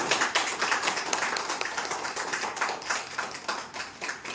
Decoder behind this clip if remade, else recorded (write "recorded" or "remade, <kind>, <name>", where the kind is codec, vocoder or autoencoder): recorded